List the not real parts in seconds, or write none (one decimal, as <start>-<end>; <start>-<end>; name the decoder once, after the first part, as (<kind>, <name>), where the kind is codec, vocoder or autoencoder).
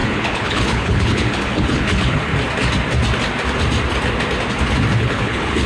0.0-2.3 (codec, HILCodec); 5.0-5.7